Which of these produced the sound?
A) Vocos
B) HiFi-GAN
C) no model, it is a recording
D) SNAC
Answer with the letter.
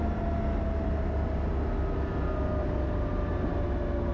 C